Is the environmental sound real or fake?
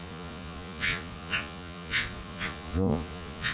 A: fake